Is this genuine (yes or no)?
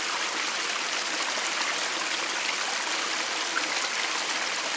yes